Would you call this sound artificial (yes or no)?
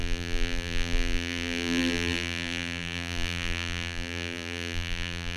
yes